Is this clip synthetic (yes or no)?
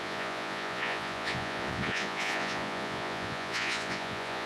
yes